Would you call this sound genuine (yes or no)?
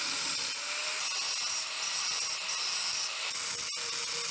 yes